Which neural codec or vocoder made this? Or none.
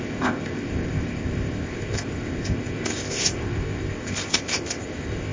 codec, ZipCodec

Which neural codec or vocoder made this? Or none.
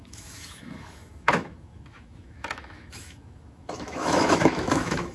autoencoder, DAC-VAE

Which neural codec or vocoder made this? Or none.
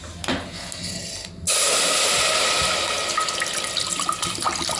none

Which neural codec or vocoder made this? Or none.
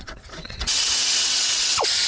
vocoder, WaveNeXt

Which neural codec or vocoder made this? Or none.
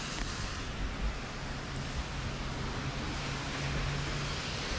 none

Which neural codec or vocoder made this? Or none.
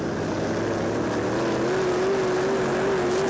none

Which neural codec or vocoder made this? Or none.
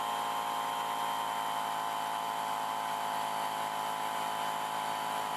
none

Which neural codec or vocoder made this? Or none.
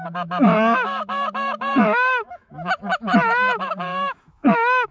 autoencoder, DAC-VAE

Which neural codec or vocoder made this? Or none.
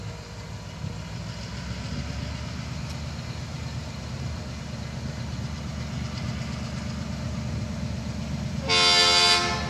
none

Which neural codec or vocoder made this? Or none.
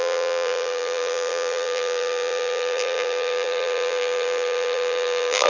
vocoder, BigVGAN v2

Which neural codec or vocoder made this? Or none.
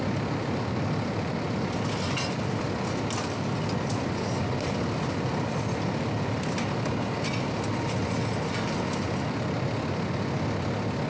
none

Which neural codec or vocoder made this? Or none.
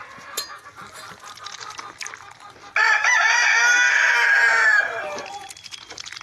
none